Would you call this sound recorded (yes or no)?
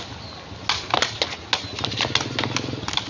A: yes